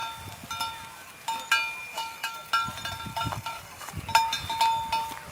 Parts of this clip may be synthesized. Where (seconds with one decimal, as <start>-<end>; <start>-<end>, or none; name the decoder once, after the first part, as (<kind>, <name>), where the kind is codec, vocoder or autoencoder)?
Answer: 1.9-2.5 (codec, DAC); 3.1-3.9